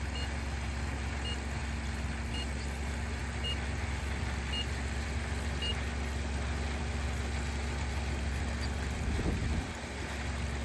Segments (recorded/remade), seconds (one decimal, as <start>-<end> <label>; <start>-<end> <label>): 0.0-10.6 recorded